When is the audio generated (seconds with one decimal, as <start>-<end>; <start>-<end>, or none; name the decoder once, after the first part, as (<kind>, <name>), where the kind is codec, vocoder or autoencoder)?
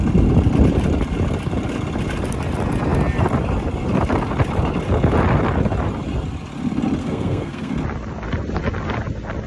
7.0-7.7 (codec, SNAC)